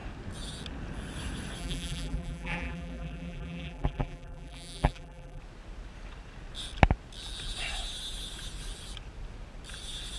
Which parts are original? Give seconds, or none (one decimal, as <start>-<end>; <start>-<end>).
0.0-1.6; 5.4-10.2